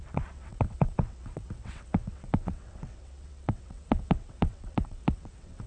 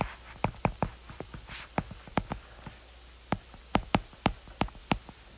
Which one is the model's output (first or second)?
first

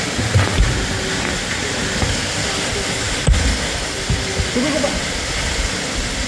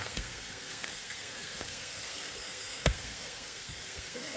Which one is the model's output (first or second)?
second